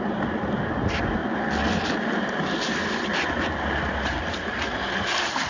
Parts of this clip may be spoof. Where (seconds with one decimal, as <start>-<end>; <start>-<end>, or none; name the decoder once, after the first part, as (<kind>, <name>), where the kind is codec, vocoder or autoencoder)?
none